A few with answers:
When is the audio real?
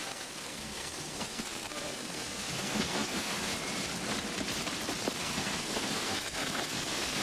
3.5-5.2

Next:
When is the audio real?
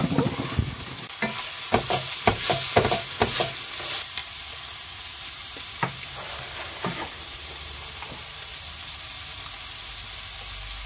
0.0-4.2; 8.0-10.9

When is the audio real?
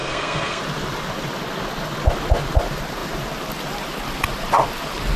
0.6-5.2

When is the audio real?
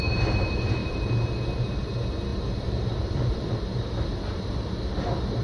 none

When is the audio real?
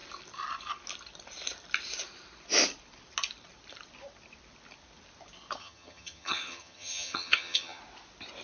0.0-5.6; 7.8-8.4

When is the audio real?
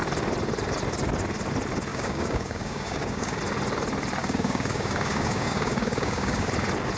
0.0-1.9; 3.4-4.2; 6.5-7.0